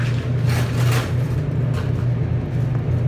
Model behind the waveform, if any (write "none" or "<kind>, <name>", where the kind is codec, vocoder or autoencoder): none